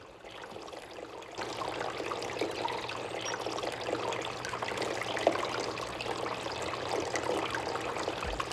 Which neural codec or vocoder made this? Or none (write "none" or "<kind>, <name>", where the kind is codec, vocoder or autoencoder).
none